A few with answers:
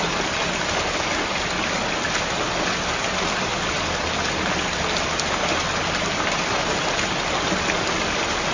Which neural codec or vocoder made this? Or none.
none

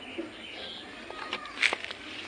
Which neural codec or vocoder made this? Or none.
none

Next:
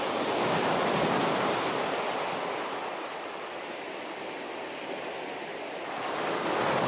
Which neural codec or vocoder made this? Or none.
none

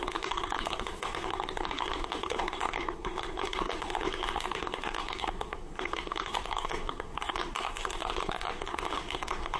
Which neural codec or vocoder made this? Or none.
codec, SNAC